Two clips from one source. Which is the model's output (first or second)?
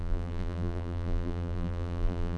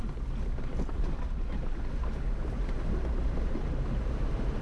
first